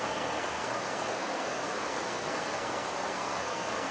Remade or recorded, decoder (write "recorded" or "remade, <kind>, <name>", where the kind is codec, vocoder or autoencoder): remade, codec, SNAC